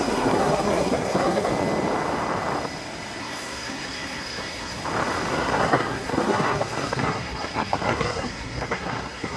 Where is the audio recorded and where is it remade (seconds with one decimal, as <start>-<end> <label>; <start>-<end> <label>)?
0.0-1.5 remade; 1.5-3.2 recorded; 3.2-4.8 remade; 4.8-5.3 recorded; 5.3-9.4 remade